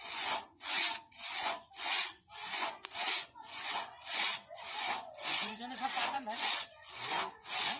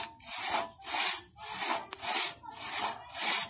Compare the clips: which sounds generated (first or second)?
first